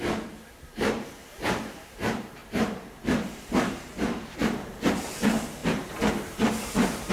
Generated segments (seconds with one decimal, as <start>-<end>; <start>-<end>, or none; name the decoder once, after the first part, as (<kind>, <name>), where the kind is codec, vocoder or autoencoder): 0.0-7.1 (vocoder, BigVGAN v2)